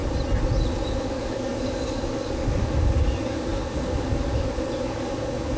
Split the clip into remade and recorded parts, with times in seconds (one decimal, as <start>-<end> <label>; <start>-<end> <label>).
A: 0.0-1.0 recorded; 1.0-5.6 remade